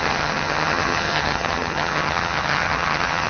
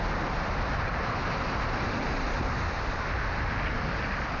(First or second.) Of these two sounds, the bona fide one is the second